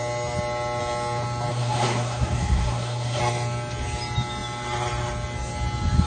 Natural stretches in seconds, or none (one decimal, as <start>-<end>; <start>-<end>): 0.0-1.5; 3.2-6.1